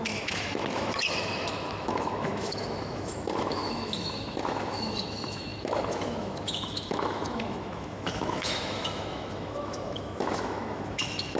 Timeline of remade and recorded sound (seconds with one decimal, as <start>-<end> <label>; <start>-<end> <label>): 0.0-11.4 remade